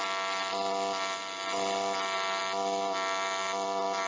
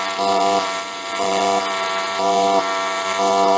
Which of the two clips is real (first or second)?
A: first